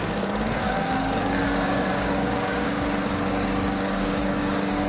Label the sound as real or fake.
fake